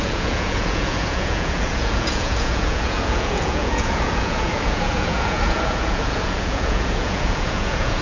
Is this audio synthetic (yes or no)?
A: yes